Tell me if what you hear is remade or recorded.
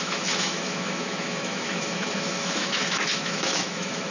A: remade